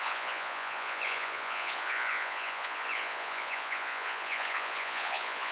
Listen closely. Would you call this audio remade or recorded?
remade